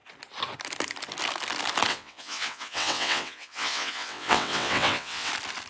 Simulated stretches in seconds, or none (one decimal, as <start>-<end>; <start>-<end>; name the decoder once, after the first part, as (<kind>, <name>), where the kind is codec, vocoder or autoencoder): 1.9-5.3 (vocoder, WaveNeXt)